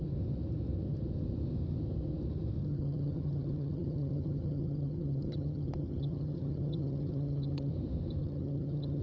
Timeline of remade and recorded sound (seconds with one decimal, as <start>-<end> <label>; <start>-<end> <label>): 0.0-2.6 recorded; 2.6-7.7 remade; 7.7-8.2 recorded; 8.2-9.0 remade